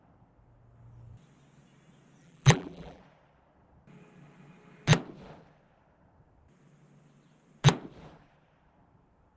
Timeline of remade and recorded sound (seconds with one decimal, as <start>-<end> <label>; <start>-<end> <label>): 0.0-2.2 recorded; 2.2-3.0 remade; 3.0-9.4 recorded

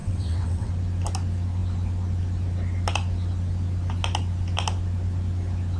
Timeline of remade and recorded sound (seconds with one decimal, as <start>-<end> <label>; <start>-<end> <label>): 0.0-0.7 remade; 0.7-5.8 recorded

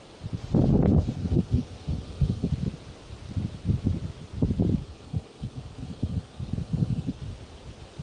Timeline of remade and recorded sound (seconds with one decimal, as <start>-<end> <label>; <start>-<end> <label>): 0.0-0.7 recorded; 0.7-2.5 remade; 2.5-4.8 recorded; 4.8-7.2 remade; 7.2-8.0 recorded